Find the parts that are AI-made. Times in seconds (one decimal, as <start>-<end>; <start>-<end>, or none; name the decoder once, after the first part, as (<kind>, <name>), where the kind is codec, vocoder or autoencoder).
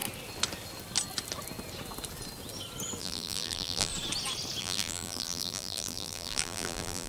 3.0-3.9 (vocoder, BigVGAN v2); 4.6-7.1